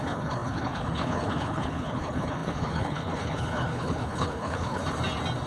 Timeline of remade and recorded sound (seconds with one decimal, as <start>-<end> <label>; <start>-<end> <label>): 0.0-4.8 remade; 4.8-5.5 recorded